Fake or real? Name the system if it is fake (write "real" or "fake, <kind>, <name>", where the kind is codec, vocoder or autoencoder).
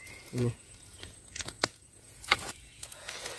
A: fake, vocoder, Vocos